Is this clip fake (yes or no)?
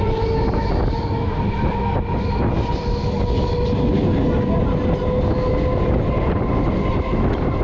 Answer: no